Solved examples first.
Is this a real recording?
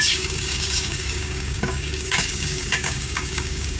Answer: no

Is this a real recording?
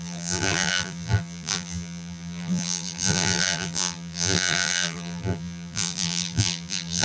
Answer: no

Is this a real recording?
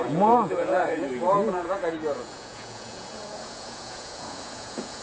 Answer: no